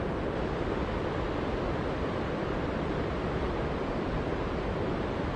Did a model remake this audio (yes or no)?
no